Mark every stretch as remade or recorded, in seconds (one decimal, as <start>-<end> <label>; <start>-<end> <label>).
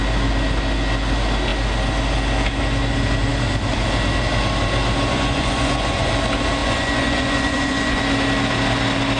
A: 0.0-5.1 recorded; 5.1-6.1 remade; 6.1-6.6 recorded; 6.6-8.0 remade; 8.0-9.2 recorded